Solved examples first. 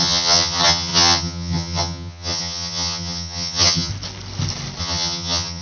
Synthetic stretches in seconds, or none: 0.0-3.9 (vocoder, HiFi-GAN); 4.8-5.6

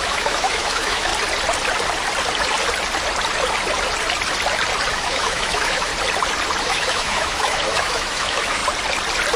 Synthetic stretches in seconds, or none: 0.0-1.1 (autoencoder, DAC-VAE); 4.9-5.9; 6.6-8.6

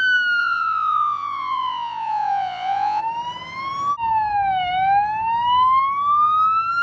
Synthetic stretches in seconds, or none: 0.4-3.0 (vocoder, Vocos)